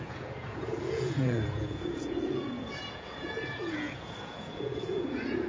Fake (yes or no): yes